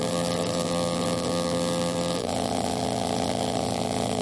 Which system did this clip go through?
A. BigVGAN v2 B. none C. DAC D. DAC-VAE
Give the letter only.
A